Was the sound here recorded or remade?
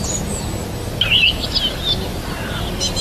recorded